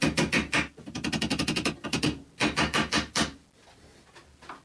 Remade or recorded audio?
recorded